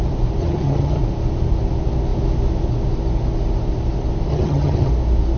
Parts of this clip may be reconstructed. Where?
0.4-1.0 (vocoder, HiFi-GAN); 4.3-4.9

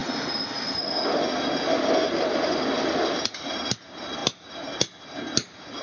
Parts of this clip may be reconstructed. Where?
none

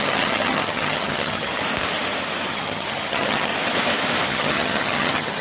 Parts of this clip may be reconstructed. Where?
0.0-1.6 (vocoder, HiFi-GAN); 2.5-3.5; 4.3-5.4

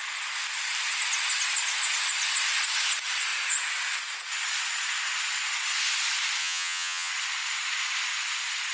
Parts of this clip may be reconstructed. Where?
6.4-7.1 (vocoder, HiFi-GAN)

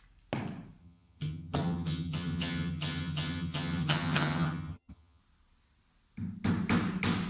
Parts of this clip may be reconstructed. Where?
0.8-5.2 (vocoder, HiFi-GAN)